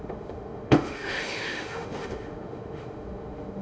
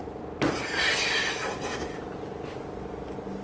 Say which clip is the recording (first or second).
second